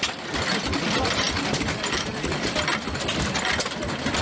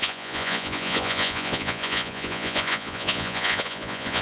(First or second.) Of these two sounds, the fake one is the second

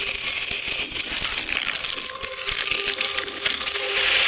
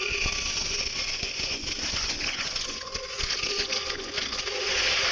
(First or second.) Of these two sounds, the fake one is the second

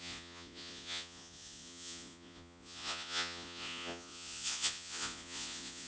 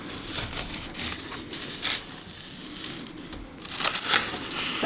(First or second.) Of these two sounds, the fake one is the first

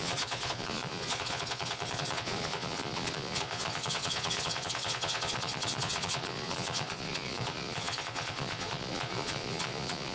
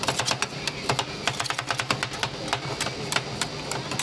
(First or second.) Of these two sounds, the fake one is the first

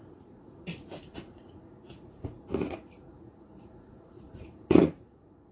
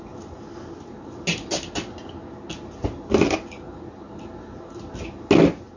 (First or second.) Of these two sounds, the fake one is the first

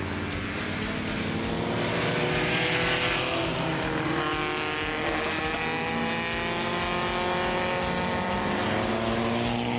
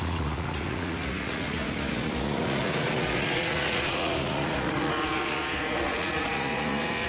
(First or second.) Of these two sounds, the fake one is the second